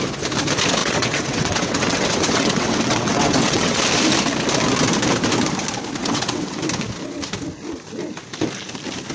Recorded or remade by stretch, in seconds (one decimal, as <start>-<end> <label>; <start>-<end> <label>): 0.0-0.8 recorded; 0.8-3.8 remade; 3.8-6.0 recorded; 6.0-6.6 remade; 6.6-9.1 recorded